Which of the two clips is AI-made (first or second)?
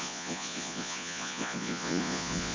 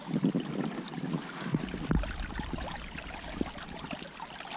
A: first